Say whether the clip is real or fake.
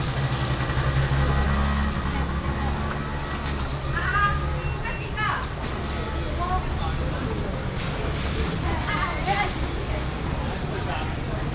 real